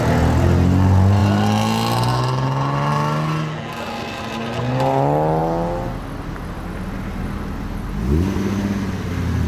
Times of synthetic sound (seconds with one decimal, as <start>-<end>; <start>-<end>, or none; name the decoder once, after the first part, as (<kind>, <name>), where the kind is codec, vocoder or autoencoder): none